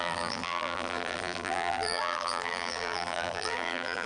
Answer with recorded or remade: remade